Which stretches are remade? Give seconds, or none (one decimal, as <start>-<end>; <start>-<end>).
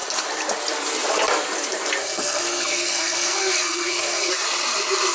2.0-4.3